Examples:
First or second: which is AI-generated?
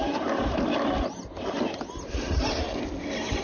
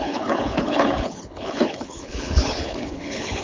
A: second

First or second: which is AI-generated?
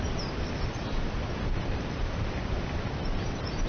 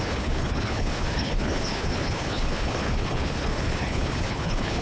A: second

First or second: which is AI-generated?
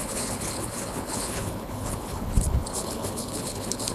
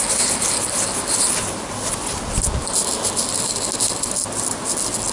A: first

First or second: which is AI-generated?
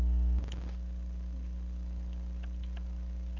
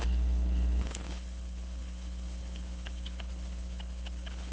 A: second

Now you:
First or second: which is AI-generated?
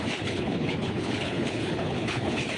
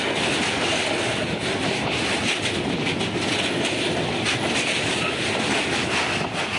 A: first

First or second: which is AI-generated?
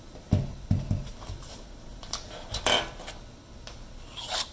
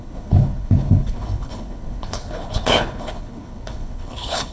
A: second